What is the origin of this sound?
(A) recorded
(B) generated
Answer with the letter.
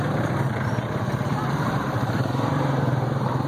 B